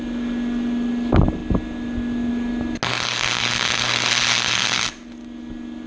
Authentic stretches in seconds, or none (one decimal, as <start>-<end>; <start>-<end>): 0.0-5.9